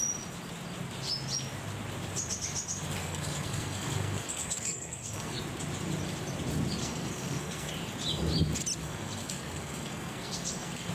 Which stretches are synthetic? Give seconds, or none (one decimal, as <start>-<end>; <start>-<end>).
3.0-5.4; 6.8-7.7; 8.8-10.9